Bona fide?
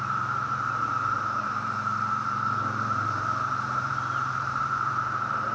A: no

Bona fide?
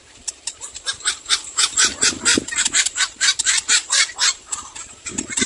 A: no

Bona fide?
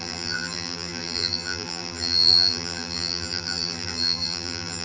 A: no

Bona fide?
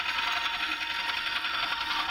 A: yes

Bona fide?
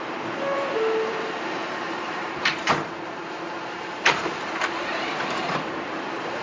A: no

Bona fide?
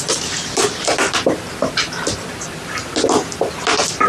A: yes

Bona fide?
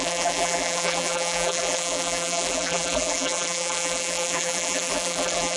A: no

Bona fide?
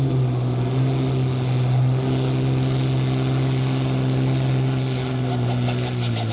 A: yes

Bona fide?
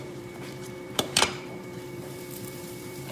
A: no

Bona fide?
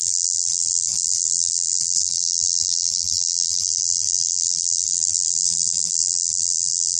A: no